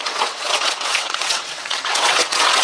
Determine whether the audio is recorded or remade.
remade